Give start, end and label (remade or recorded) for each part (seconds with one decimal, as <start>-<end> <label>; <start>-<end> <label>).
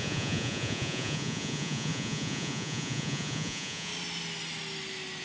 0.0-3.9 remade; 3.9-5.2 recorded